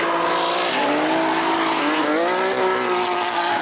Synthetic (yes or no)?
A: no